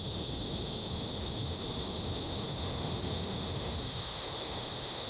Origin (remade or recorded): remade